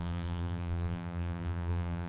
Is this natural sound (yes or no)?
no